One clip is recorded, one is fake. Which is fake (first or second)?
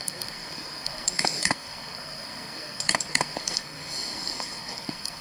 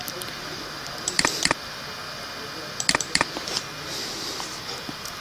first